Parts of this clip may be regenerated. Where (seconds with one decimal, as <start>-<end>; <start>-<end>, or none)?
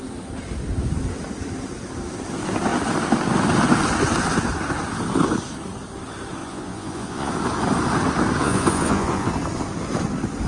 6.4-7.3; 8.4-9.3